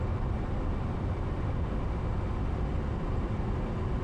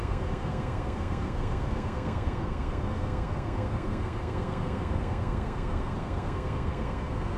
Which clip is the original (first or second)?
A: first